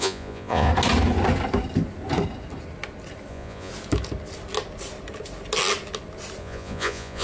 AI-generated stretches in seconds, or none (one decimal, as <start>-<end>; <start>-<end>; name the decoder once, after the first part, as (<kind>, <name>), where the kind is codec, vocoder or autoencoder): 0.0-0.7 (vocoder, Vocos); 3.3-3.7; 6.4-7.2